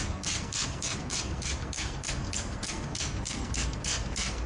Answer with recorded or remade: remade